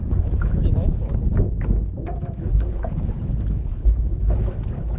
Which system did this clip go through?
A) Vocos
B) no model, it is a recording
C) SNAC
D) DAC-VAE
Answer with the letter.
D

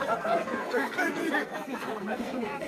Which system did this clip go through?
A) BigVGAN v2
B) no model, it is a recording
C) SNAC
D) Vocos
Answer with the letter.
C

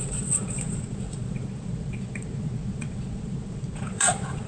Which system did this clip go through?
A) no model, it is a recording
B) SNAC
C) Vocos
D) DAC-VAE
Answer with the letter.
C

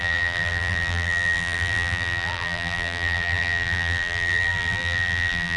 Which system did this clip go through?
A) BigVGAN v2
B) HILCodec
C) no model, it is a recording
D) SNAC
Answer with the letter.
A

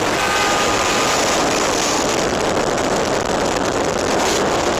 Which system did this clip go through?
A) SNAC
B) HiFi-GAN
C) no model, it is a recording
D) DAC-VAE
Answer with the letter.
C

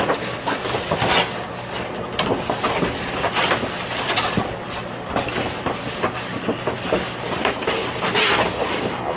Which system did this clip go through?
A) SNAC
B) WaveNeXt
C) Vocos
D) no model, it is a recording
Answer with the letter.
D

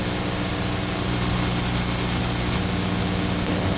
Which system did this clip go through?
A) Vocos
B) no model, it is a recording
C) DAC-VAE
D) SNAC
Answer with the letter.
B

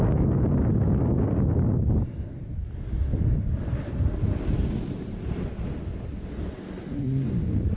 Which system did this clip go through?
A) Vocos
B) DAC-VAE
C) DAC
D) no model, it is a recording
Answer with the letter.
D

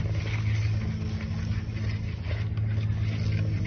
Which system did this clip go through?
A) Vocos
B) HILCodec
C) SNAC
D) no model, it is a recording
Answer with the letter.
D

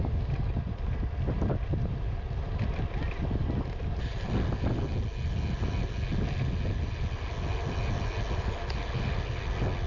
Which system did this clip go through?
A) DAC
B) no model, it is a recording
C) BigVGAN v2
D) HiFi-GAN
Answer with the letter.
B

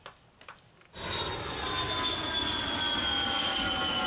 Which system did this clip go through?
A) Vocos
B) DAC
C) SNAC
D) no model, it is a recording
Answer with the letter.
D